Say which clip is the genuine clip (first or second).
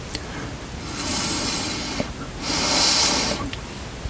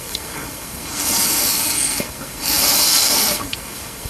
first